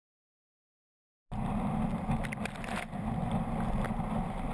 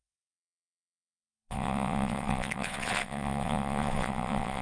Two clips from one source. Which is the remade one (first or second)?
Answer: second